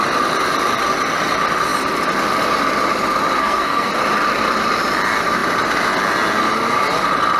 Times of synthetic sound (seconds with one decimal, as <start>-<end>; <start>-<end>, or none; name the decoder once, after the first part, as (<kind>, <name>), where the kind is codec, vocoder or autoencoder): 3.4-3.9 (codec, SNAC)